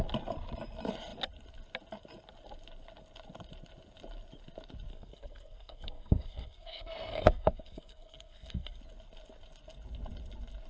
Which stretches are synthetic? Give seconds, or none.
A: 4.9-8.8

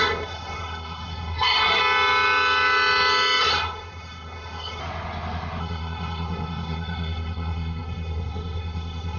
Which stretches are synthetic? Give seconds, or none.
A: 0.0-1.8; 3.4-4.8; 5.6-9.2

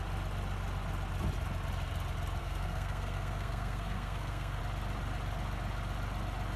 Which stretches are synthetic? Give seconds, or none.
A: 2.4-4.6

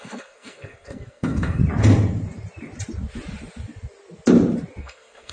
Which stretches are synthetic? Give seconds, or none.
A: 0.0-1.6; 4.8-5.3

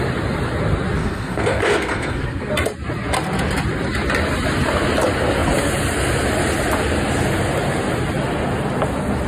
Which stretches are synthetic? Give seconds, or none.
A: 1.0-2.5

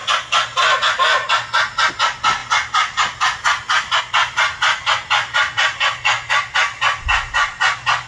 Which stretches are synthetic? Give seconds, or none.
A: none

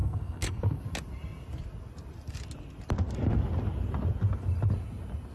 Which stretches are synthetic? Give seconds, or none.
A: 0.0-0.8

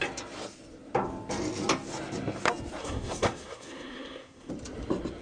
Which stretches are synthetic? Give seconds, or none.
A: 2.8-4.5